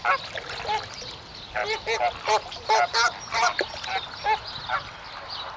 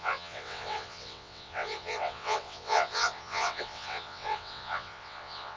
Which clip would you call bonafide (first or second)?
first